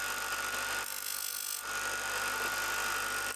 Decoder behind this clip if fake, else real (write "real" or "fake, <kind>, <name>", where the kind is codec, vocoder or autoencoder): real